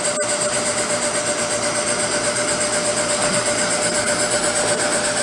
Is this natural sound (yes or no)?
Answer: yes